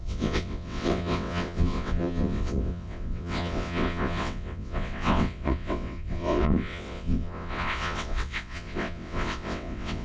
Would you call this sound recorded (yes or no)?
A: no